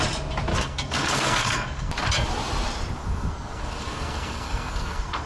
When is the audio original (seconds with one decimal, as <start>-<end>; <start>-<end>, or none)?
0.0-0.5; 1.9-3.0